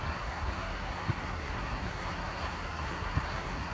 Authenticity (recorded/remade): remade